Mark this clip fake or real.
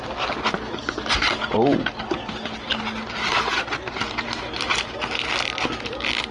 real